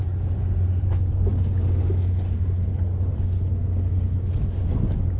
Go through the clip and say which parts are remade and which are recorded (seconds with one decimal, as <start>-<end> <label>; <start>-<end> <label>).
0.0-5.2 recorded